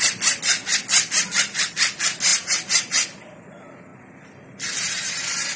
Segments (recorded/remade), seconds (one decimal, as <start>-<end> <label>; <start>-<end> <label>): 0.0-5.6 recorded